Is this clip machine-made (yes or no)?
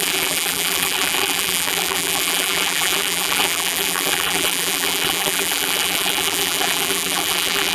yes